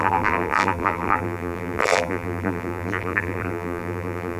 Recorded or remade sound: remade